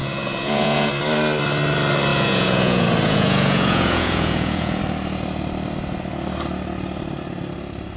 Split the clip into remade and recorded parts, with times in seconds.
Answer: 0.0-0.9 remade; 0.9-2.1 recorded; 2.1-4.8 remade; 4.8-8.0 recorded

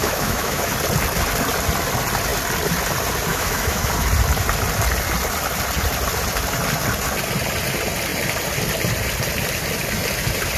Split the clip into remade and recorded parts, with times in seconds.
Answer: 0.0-0.7 remade; 0.7-3.3 recorded; 3.3-3.9 remade; 3.9-10.6 recorded